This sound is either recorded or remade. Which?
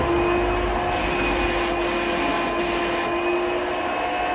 recorded